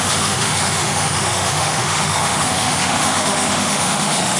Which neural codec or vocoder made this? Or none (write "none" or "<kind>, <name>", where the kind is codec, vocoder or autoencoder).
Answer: autoencoder, DAC-VAE